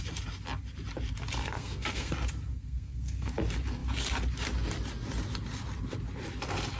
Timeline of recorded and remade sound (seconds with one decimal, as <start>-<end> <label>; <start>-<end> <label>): 0.0-1.4 recorded; 1.4-2.1 remade; 2.1-2.5 recorded; 2.5-3.3 remade; 3.3-6.8 recorded